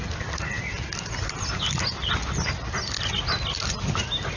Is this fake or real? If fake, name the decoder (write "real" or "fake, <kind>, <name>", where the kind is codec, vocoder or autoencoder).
real